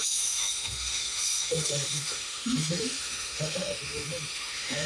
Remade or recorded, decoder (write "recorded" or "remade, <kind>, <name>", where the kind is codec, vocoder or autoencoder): remade, autoencoder, DAC-VAE